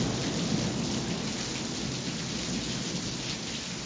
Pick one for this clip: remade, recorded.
recorded